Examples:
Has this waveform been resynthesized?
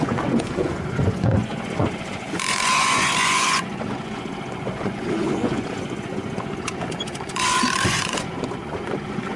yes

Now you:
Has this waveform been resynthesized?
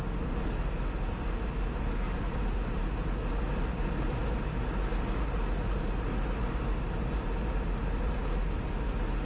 no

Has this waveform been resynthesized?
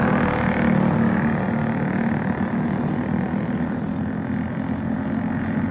no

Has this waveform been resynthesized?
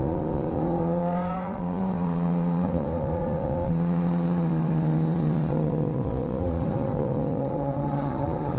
yes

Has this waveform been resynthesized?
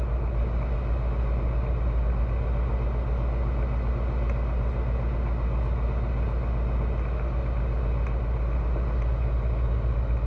no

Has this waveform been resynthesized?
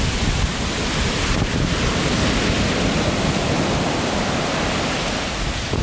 no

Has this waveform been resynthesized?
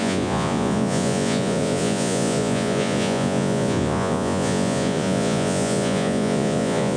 yes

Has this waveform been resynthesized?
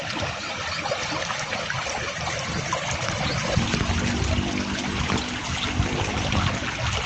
no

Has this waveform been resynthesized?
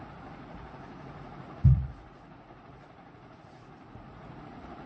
yes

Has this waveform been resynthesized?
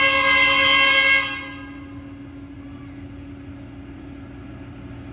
no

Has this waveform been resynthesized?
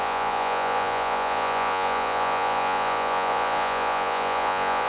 yes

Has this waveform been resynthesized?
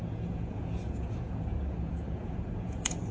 yes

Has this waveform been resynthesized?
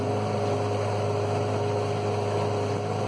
no